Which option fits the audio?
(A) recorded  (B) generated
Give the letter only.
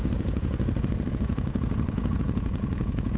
B